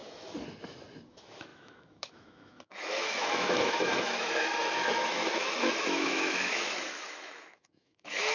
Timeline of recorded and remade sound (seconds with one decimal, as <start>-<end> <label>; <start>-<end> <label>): 0.0-1.1 recorded; 1.1-8.3 remade